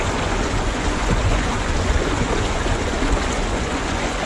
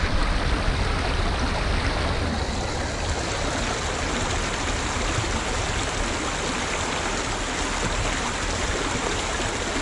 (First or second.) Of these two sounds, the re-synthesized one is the first